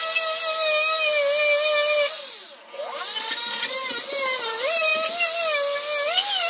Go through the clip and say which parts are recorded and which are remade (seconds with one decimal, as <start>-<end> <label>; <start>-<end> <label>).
0.0-6.5 recorded